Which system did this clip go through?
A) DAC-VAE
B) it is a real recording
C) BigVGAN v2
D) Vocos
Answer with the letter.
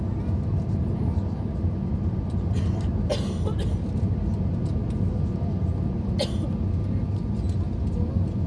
B